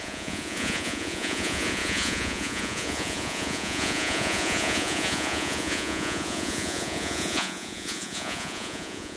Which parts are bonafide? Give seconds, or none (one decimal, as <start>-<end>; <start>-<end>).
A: none